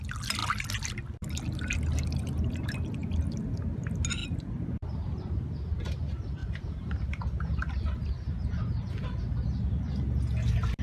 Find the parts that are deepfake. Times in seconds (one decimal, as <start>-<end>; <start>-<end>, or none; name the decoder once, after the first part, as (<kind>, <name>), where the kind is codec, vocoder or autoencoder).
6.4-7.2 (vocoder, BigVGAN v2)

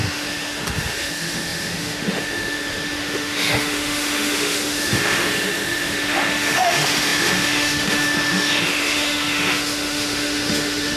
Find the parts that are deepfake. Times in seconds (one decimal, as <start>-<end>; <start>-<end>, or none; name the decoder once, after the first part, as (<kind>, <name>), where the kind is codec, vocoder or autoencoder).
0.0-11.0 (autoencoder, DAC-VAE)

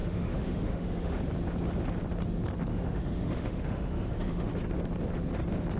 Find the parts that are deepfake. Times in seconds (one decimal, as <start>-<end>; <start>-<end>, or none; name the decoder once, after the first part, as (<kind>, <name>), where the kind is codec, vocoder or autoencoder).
0.0-1.2 (autoencoder, DAC-VAE); 2.7-4.5